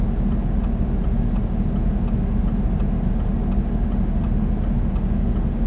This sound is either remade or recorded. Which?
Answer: recorded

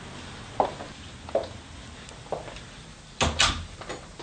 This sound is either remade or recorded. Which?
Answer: recorded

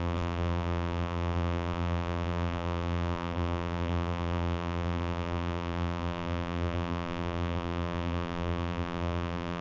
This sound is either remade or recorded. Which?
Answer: remade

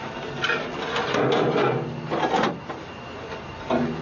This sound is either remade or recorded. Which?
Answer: recorded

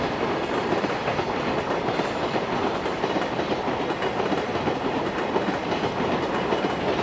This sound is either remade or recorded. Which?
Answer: recorded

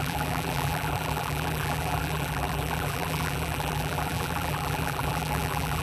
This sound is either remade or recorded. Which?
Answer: remade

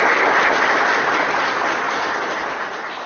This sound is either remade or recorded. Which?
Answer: recorded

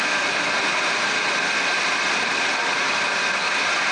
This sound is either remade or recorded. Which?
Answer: recorded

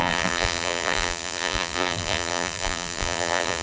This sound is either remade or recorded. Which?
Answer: remade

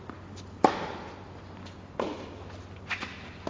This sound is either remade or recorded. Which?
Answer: recorded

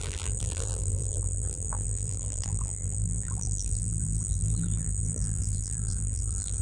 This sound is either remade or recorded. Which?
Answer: remade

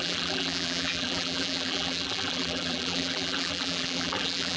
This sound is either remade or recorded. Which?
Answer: remade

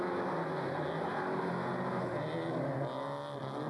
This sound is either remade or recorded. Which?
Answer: recorded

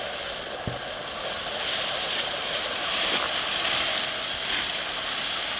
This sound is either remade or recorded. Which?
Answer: recorded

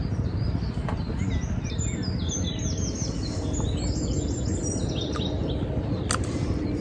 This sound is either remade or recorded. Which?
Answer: recorded